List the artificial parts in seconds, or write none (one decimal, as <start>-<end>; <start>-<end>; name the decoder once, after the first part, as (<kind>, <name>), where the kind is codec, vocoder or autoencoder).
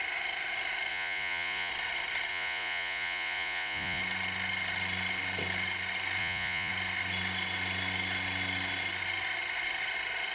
0.9-1.7 (vocoder, Vocos); 2.3-4.0; 6.2-6.7